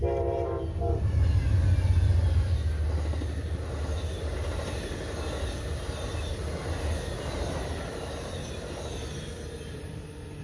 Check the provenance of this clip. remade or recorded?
recorded